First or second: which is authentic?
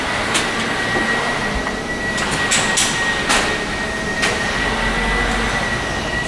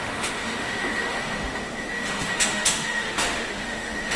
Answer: first